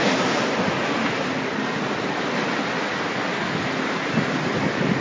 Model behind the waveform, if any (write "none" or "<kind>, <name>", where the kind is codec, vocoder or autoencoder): none